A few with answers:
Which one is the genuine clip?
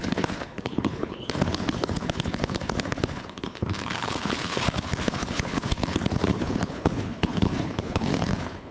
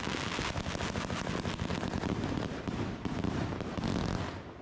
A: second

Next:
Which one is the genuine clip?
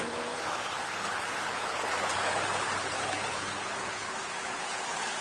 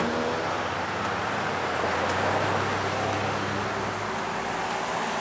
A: second